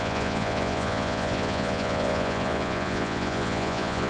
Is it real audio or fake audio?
fake